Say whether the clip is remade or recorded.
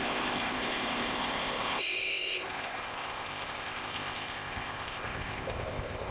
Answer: remade